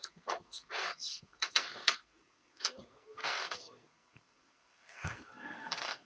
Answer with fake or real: fake